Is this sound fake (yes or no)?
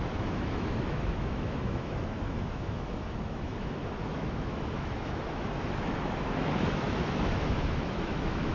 yes